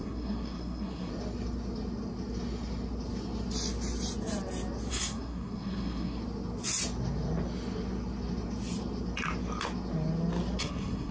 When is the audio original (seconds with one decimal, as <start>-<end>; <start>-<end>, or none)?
1.1-4.9; 6.2-10.6